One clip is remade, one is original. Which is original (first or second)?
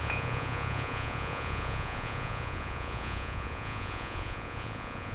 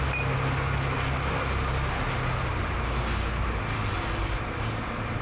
second